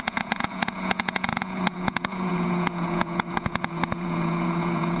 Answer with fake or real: fake